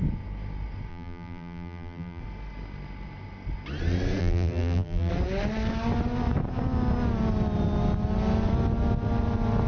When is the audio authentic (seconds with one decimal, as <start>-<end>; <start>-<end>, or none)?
0.0-0.9; 2.2-4.2; 5.1-9.7